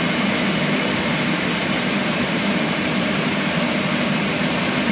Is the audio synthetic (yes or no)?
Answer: yes